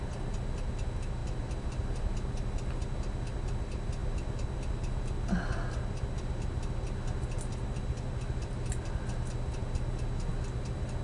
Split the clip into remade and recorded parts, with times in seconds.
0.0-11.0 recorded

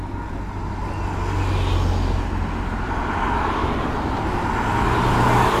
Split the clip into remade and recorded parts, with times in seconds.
0.0-5.6 recorded